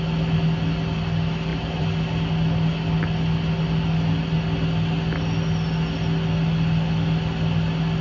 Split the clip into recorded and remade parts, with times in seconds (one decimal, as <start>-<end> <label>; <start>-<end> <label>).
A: 0.0-8.0 recorded